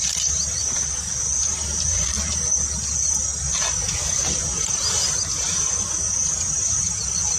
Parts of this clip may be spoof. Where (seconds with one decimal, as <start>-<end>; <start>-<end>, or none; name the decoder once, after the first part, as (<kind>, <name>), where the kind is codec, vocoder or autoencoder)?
none